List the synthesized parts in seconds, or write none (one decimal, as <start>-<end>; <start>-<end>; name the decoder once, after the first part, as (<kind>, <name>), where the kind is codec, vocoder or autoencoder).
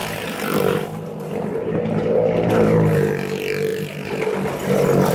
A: 0.0-3.1 (vocoder, BigVGAN v2); 3.7-4.2